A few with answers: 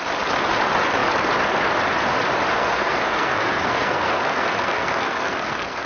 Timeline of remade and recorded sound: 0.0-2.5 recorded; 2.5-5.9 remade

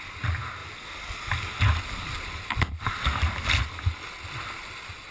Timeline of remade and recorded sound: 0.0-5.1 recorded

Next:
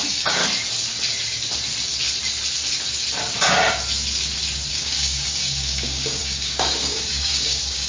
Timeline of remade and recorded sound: 0.0-0.4 remade; 0.4-4.7 recorded; 4.7-7.9 remade

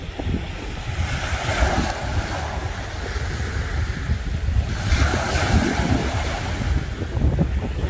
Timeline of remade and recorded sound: 0.0-5.1 recorded; 5.1-6.5 remade; 6.5-7.9 recorded

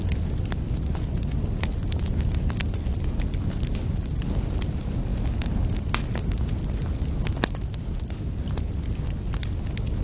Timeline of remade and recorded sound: 0.0-10.0 recorded

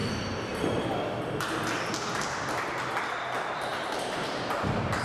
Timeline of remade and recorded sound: 0.0-3.7 recorded; 3.7-5.0 remade

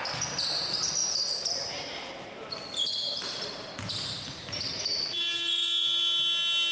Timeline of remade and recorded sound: 0.0-1.0 recorded; 1.0-1.6 remade; 1.6-6.7 recorded